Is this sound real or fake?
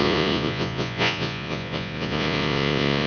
fake